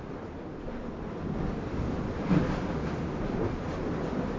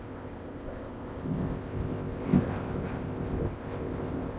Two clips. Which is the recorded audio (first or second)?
first